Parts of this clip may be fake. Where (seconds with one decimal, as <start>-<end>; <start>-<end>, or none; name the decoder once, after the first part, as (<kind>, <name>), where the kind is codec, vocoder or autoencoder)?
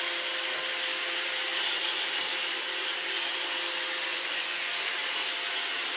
4.1-4.7 (vocoder, Vocos)